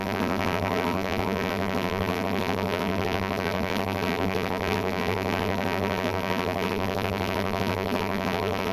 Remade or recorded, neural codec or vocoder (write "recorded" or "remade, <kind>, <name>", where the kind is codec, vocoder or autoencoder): remade, vocoder, BigVGAN v2